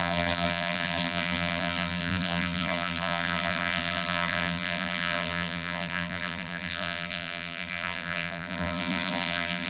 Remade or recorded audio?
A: remade